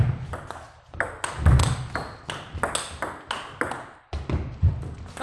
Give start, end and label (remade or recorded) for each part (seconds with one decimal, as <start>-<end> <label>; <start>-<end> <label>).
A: 0.0-5.2 recorded